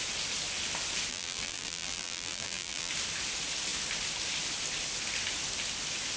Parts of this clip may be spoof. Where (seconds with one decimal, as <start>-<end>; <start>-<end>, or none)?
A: 1.1-2.9